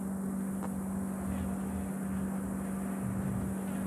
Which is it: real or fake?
real